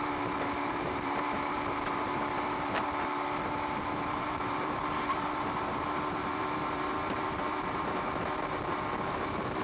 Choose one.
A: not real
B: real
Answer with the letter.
A